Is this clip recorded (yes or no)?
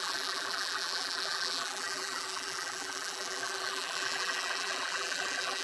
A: no